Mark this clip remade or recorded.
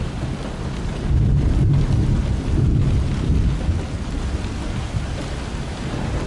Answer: recorded